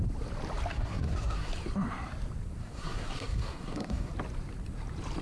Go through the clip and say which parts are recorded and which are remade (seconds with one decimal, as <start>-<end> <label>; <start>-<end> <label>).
0.0-0.7 recorded; 0.7-1.5 remade; 1.5-2.6 recorded; 2.6-4.1 remade; 4.1-5.2 recorded